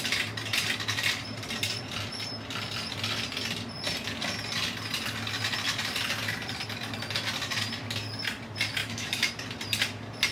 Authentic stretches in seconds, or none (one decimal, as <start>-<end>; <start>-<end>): 0.0-8.8; 9.3-10.3